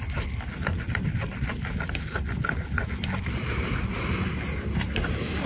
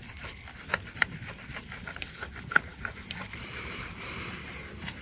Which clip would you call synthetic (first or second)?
second